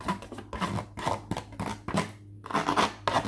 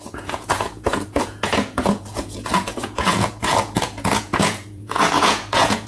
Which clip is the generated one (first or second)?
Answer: second